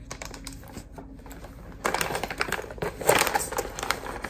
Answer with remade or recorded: recorded